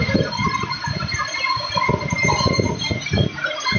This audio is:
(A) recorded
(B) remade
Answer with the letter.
A